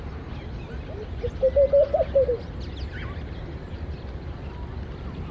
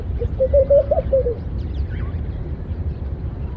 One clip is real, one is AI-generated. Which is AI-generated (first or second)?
second